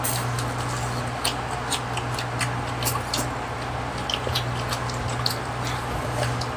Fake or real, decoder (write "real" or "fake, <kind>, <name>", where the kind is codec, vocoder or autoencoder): real